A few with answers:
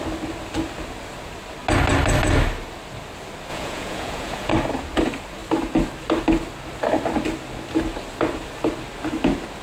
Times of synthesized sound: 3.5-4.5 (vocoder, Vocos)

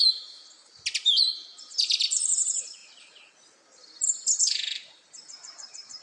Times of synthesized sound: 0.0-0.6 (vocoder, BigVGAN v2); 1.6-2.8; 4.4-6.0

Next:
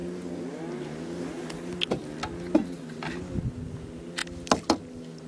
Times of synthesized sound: none

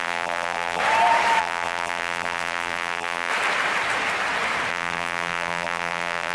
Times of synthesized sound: 0.0-0.8 (vocoder, BigVGAN v2); 1.4-3.3; 4.7-6.3

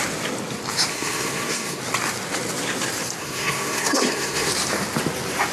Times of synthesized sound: 0.9-1.8 (codec, SNAC); 3.2-4.5

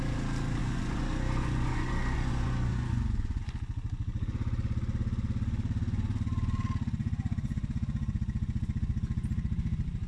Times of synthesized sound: 0.6-3.4 (vocoder, Vocos); 7.0-8.2

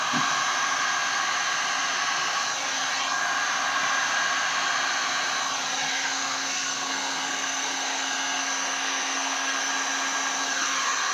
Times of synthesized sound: 5.9-9.7 (codec, SNAC)